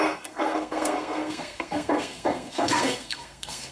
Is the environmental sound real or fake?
fake